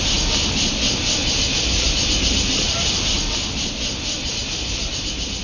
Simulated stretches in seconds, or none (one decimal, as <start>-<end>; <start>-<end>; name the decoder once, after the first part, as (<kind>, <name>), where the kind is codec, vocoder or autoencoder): none